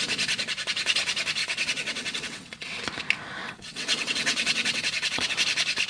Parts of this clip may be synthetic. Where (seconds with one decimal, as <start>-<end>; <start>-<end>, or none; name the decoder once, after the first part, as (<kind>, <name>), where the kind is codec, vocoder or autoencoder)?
1.4-2.8 (vocoder, WaveNeXt); 3.4-5.3